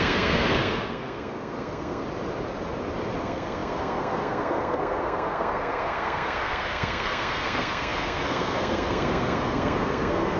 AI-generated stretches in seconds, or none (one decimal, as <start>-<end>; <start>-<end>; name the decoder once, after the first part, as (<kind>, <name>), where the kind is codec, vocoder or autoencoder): 0.0-2.0 (codec, SNAC); 3.2-10.4